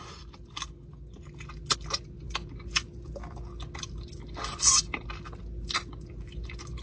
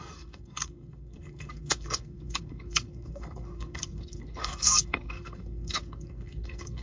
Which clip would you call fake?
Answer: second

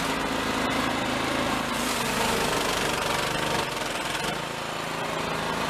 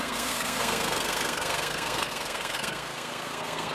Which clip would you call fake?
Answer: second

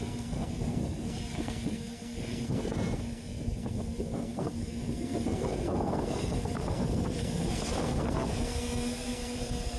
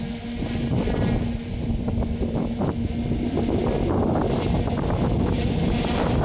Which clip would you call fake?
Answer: first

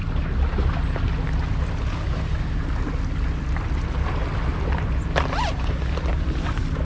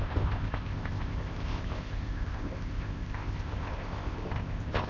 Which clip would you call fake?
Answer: second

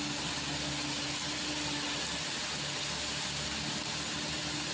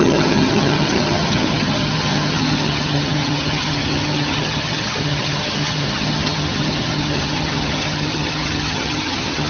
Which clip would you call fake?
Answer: second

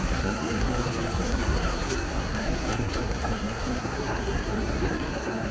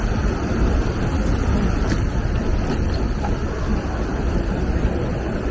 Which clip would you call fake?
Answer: first